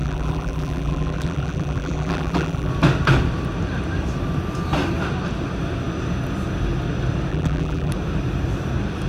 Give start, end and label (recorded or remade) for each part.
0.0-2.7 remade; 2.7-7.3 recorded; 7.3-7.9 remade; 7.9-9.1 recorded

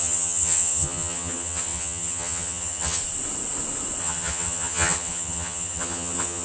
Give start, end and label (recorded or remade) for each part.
0.0-3.0 remade; 3.0-4.0 recorded; 4.0-6.4 remade